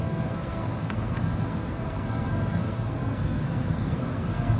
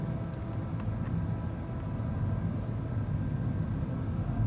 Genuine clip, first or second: second